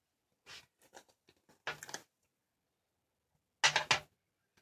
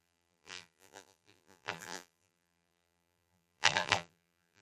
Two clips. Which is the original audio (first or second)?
first